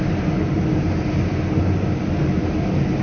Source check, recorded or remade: recorded